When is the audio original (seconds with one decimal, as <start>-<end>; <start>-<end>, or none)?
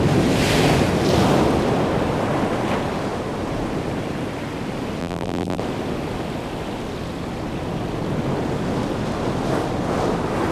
0.0-5.0; 5.6-10.5